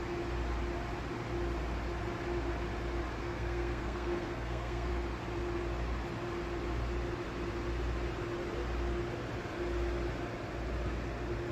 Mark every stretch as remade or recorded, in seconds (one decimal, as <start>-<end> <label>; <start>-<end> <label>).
0.0-3.2 recorded; 3.2-4.9 remade; 4.9-11.5 recorded